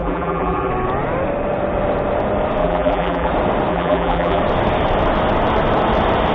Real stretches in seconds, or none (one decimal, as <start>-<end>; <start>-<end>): 0.7-2.6; 3.3-3.7; 4.4-6.3